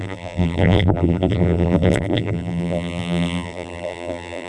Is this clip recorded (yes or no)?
no